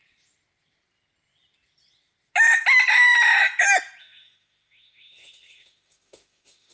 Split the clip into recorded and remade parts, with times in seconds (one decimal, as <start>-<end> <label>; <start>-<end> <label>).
0.0-4.0 recorded; 4.0-6.7 remade